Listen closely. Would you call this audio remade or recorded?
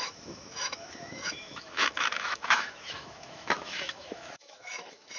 remade